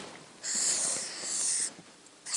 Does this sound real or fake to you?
fake